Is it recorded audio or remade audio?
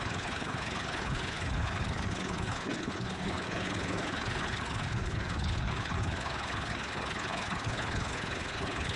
remade